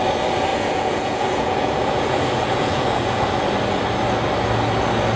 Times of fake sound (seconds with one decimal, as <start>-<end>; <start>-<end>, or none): 0.5-3.3